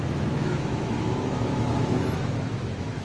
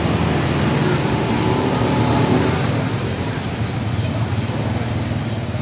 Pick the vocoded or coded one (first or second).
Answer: first